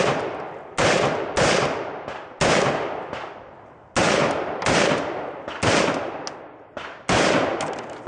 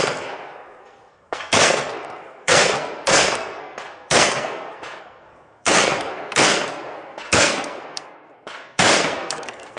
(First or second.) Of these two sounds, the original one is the first